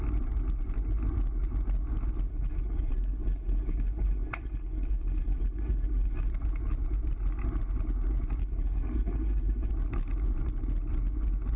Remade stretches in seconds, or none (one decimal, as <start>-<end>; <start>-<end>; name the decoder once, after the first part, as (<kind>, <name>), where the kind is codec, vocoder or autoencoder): 2.3-6.3 (codec, HILCodec); 8.4-9.7